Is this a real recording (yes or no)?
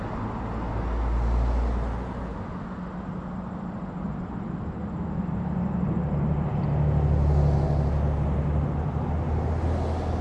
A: yes